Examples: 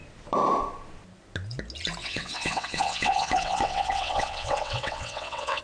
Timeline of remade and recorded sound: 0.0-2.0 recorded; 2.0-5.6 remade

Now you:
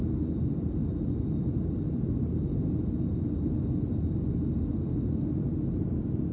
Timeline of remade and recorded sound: 0.0-6.3 recorded